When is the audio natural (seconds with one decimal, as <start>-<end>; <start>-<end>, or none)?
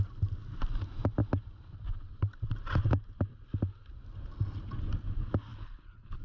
0.0-5.5